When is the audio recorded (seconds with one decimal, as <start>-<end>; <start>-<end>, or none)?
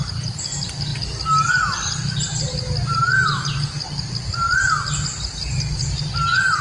0.0-6.6